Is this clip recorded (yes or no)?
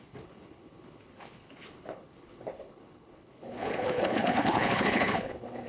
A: no